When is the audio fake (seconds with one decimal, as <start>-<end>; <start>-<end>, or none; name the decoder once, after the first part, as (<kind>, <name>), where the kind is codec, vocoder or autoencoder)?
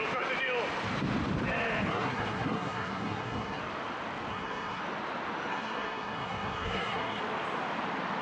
1.9-3.6 (codec, SNAC); 4.3-4.8; 5.5-7.2